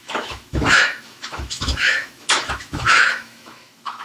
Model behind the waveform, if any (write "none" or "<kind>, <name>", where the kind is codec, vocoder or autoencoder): autoencoder, DAC-VAE